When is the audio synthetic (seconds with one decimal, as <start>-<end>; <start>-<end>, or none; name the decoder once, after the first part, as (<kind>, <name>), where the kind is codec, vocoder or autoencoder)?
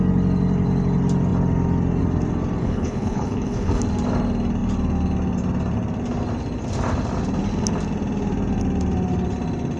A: 2.6-3.8 (codec, HILCodec)